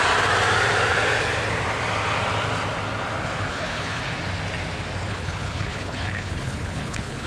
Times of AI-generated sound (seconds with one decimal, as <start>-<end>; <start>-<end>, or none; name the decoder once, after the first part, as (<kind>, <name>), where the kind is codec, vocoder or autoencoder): 3.5-4.0 (codec, HILCodec); 5.1-7.3